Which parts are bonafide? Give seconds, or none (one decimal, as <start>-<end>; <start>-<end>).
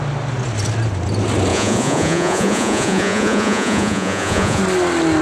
0.0-1.5; 4.6-5.2